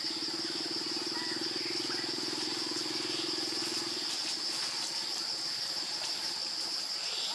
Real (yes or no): yes